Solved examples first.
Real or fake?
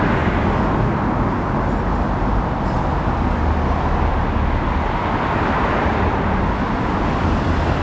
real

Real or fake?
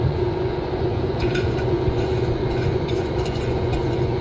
fake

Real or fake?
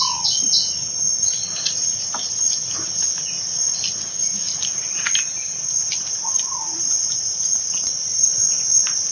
real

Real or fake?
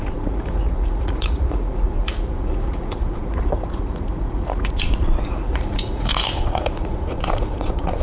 fake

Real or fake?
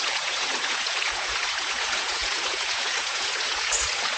fake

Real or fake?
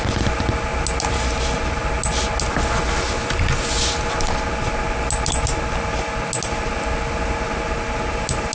real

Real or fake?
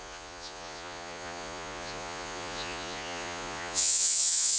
fake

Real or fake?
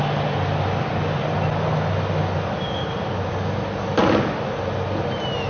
real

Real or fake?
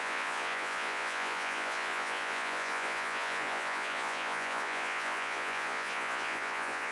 fake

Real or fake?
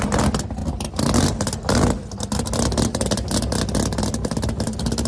real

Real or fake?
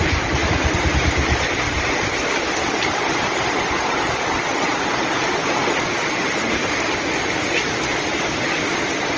real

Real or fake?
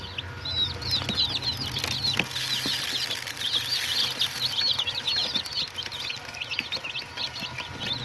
real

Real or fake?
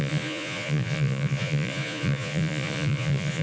fake